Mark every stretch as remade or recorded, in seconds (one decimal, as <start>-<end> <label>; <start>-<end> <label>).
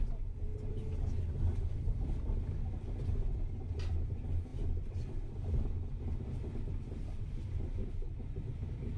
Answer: 0.0-0.5 remade; 0.5-1.3 recorded; 1.3-9.0 remade